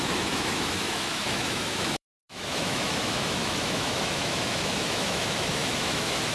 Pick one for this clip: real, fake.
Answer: fake